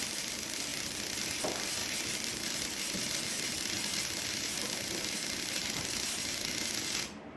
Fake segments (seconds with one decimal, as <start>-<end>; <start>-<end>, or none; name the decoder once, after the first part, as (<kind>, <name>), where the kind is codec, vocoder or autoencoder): 0.7-1.4 (vocoder, BigVGAN v2); 1.8-5.8